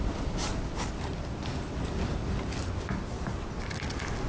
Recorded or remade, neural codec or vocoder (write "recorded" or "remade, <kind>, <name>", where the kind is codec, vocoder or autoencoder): recorded